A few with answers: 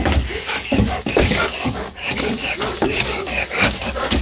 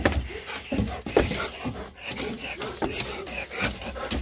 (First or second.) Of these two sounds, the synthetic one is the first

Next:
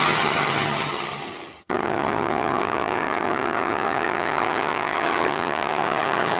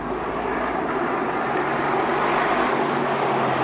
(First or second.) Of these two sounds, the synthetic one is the first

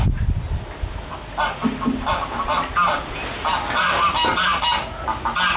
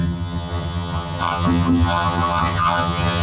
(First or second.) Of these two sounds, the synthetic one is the second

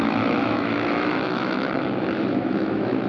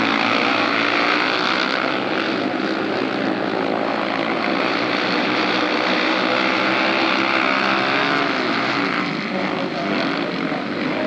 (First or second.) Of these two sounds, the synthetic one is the first